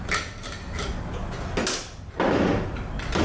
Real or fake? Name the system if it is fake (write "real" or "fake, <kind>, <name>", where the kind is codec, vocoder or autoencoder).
real